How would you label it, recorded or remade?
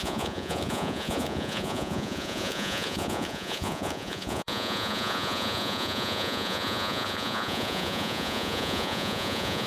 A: remade